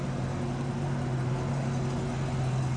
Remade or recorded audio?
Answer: recorded